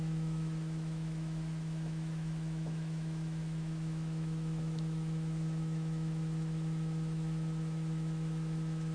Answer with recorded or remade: remade